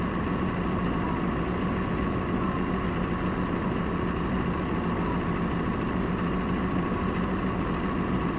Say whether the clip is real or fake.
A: real